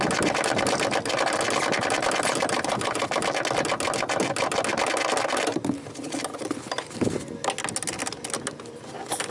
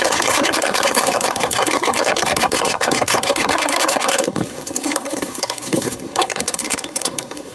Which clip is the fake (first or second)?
second